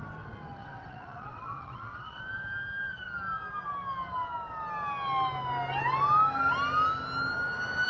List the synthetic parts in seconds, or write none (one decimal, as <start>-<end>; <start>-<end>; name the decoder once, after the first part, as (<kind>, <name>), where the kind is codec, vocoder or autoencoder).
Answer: 0.6-2.2 (vocoder, WaveNeXt)